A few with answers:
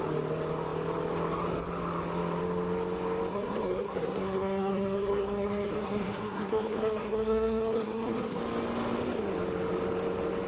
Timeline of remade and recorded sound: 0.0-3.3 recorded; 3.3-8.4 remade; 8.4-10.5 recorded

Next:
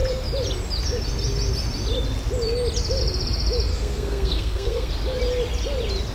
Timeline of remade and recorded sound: 0.0-3.7 recorded; 3.7-4.9 remade; 4.9-6.1 recorded

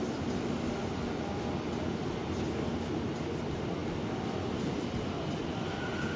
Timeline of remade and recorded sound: 0.0-6.2 recorded

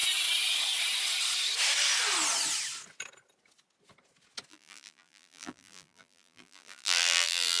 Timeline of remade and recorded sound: 0.0-4.5 recorded; 4.5-7.6 remade